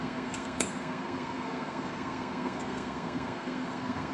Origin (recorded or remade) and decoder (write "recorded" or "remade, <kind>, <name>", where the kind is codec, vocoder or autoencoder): remade, codec, SNAC